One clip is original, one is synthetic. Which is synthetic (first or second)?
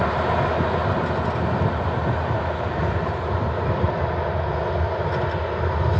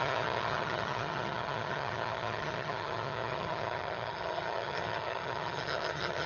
second